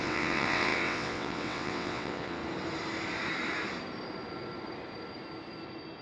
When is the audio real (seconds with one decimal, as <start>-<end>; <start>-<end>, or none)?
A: 2.4-6.0